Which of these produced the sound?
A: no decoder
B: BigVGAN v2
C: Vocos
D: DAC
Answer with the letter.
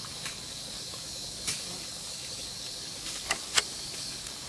D